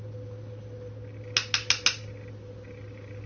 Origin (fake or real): real